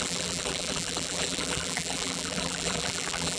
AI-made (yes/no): yes